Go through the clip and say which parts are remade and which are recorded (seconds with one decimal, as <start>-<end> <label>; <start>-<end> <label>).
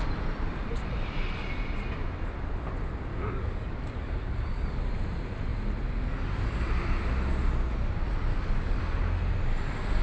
0.0-3.1 recorded; 3.1-4.8 remade; 4.8-8.3 recorded; 8.3-8.8 remade; 8.8-10.0 recorded